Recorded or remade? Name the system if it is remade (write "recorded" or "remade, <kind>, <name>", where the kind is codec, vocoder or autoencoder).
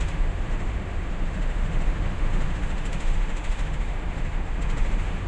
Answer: remade, autoencoder, DAC-VAE